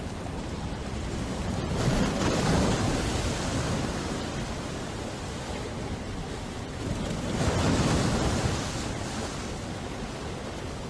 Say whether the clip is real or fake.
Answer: real